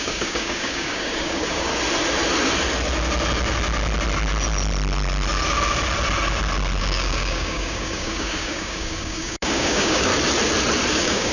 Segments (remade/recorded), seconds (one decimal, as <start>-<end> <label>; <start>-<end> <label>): 0.0-1.7 remade; 1.7-6.8 recorded; 6.8-10.1 remade; 10.1-10.9 recorded; 10.9-11.3 remade